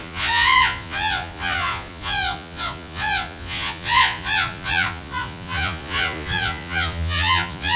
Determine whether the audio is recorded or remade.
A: remade